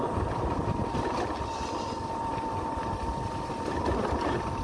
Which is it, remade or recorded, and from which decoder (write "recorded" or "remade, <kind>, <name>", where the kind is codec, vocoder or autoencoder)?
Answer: recorded